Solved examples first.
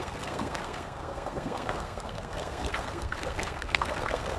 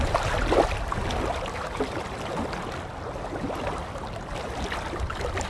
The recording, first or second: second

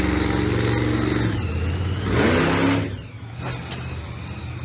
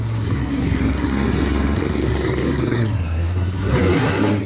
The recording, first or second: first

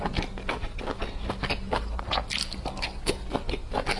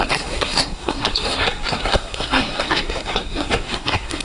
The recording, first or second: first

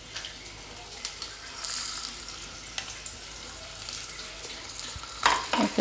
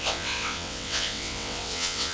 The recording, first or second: first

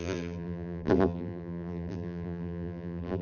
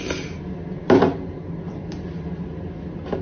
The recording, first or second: second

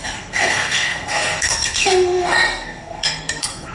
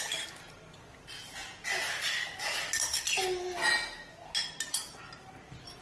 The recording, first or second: second